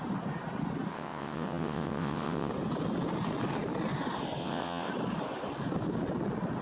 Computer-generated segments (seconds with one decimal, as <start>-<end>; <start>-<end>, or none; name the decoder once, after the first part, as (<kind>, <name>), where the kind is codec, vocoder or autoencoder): 0.9-2.5 (vocoder, WaveNeXt); 4.4-4.9